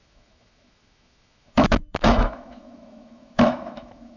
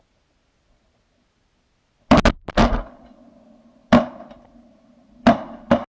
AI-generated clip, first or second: first